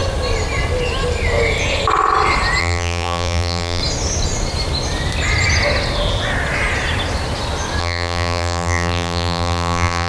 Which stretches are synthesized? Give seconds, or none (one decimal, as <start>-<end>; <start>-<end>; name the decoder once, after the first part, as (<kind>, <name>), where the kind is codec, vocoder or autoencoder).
2.6-3.8 (vocoder, BigVGAN v2); 7.8-10.1